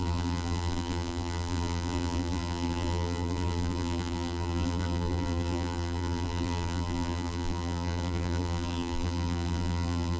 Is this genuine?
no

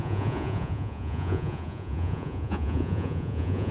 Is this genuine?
no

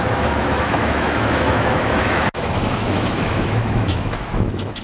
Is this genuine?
no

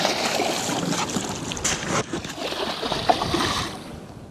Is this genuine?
yes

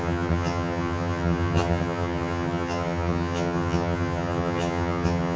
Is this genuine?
no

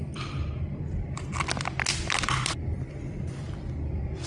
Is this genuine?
yes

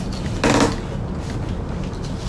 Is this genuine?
yes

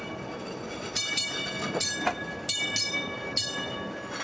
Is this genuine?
yes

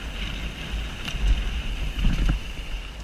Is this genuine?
yes